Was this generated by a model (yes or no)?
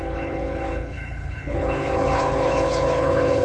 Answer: yes